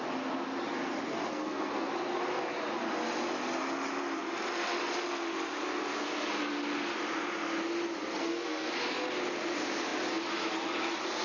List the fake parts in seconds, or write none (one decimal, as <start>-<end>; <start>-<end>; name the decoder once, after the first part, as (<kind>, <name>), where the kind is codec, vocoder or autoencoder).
1.3-1.9 (codec, SNAC); 8.1-8.7